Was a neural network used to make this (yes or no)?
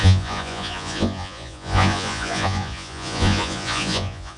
yes